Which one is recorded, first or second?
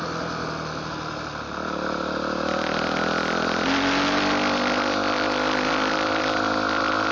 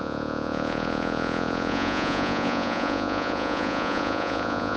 first